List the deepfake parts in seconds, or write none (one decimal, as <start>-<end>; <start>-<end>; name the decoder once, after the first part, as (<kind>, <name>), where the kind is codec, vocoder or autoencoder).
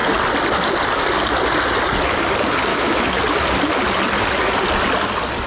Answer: 2.7-3.2 (autoencoder, DAC-VAE)